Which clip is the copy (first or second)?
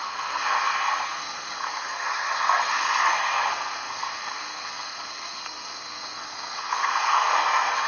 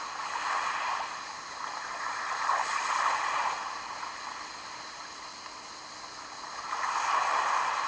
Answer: first